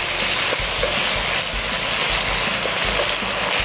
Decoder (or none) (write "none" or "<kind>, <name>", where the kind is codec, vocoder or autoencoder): none